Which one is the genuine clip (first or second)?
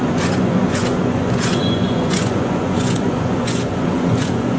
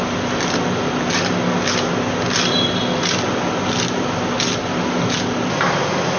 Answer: second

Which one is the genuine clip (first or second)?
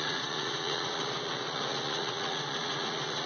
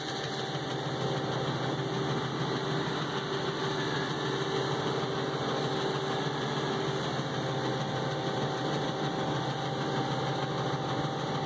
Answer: second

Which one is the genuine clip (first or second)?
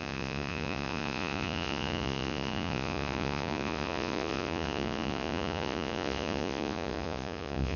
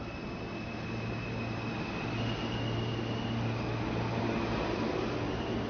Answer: second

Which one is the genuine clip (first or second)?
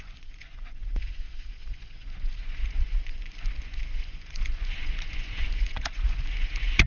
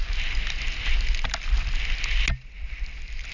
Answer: second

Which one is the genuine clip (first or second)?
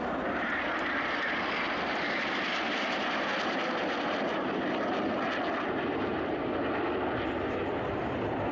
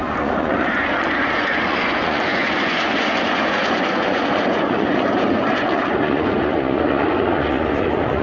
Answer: first